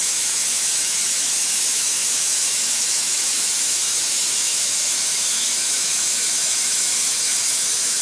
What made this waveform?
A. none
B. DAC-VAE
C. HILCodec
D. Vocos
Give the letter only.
B